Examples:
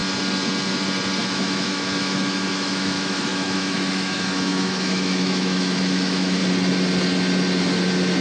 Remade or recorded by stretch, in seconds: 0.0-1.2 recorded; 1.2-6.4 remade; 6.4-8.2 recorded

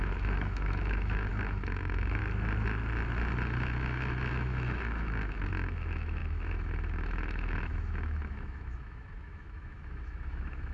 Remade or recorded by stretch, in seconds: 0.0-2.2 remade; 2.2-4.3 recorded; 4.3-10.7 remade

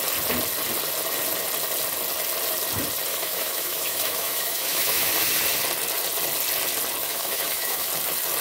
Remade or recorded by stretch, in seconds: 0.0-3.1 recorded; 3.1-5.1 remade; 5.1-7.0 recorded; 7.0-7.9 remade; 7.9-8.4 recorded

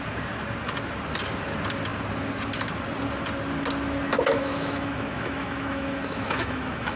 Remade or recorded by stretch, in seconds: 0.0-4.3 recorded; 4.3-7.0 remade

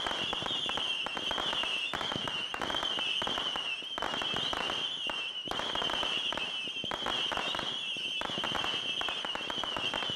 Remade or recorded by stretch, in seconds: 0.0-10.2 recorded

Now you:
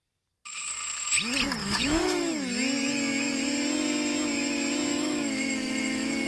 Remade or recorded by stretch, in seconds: 0.0-1.6 recorded; 1.6-2.3 remade; 2.3-4.9 recorded; 4.9-6.3 remade